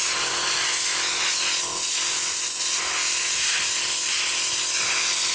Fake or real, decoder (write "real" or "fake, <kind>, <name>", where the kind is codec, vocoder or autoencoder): real